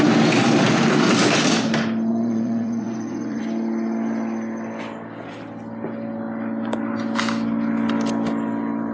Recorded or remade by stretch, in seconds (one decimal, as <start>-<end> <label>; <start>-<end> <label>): 0.0-2.1 recorded; 2.1-3.4 remade; 3.4-8.9 recorded